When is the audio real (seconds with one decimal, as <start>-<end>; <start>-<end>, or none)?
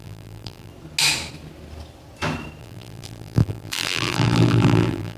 0.7-2.6